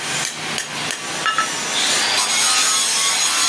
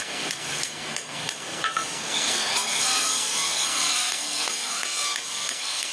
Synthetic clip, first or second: second